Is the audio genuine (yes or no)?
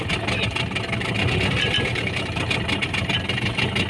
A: yes